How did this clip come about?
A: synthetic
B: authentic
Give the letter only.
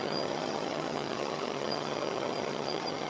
A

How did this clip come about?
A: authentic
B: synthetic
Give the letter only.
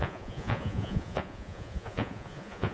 B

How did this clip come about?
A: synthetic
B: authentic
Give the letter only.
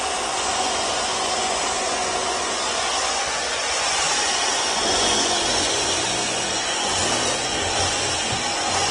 A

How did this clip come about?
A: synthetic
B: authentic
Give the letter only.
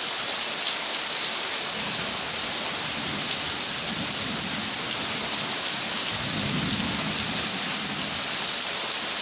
B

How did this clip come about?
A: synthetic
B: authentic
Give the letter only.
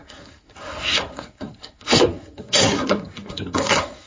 A